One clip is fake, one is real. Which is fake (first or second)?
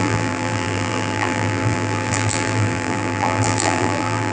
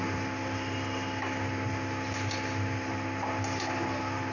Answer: first